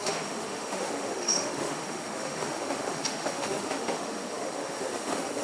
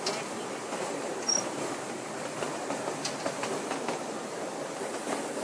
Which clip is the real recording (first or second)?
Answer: second